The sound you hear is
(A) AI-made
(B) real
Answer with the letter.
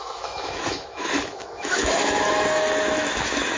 A